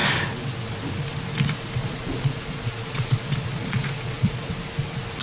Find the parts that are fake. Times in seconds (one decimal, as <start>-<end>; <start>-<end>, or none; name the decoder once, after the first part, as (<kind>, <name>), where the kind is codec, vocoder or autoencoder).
1.8-4.5 (vocoder, Vocos)